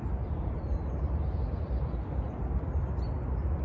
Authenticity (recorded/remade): recorded